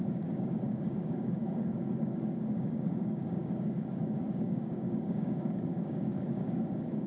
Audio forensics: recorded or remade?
remade